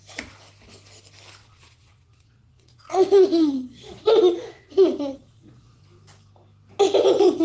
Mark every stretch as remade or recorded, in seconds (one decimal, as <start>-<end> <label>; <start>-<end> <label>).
0.0-1.4 recorded; 1.4-5.8 remade; 5.8-7.4 recorded